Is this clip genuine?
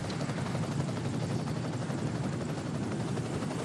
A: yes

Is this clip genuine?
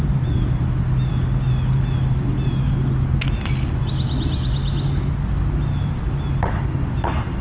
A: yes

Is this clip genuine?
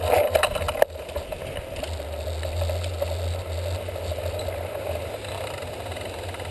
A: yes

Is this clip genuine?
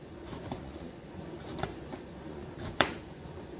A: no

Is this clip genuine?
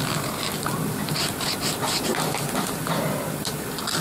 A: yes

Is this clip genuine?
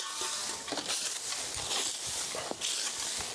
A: yes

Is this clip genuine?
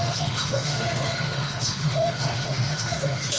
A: no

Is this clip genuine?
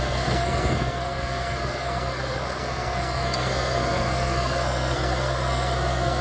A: no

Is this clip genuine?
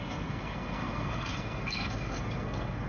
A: no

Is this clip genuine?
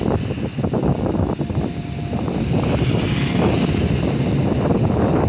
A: yes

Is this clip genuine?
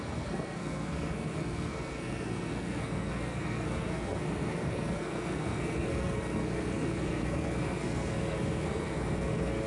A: no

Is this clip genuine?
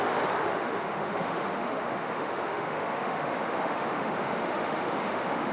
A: no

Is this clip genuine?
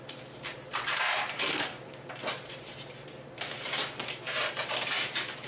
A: no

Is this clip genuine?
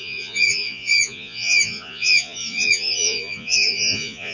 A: no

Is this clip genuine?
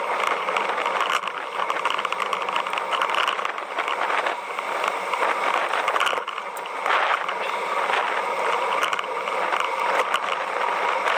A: yes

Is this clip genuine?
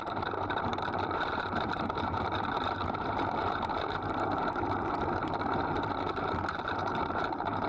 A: no